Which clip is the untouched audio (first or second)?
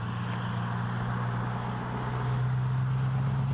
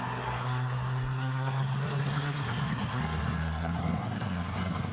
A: first